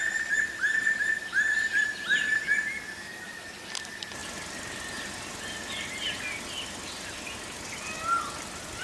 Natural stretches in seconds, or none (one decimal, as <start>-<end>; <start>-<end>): 0.0-8.8